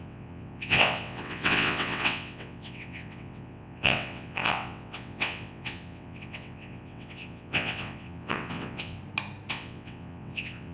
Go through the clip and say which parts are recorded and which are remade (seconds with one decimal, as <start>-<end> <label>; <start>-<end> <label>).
0.0-9.0 remade; 9.0-9.5 recorded; 9.5-10.7 remade